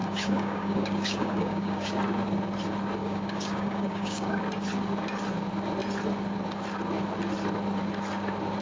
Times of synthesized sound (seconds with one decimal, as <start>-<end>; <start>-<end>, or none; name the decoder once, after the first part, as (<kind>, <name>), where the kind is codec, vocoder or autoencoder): 0.0-1.9 (codec, DAC); 3.0-4.4